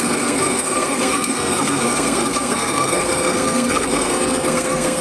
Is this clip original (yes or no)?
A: no